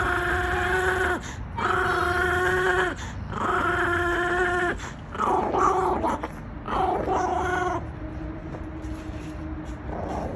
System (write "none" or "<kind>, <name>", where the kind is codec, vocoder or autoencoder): none